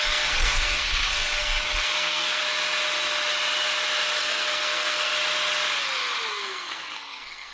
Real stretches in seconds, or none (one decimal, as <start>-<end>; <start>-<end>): 2.4-4.2; 5.1-6.3